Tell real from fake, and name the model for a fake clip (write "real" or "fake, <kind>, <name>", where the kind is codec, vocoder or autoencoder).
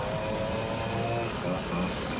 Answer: real